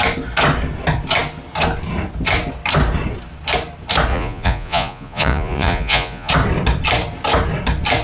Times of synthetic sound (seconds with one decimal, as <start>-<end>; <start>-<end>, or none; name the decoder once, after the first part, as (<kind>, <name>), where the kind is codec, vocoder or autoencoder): 4.1-6.3 (vocoder, Vocos)